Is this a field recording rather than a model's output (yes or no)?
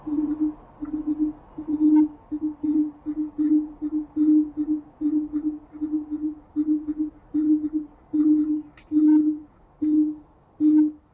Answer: yes